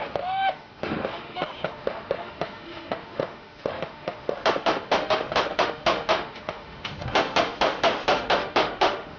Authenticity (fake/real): fake